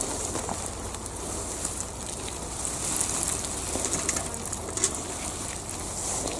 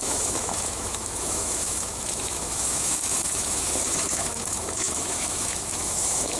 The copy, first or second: second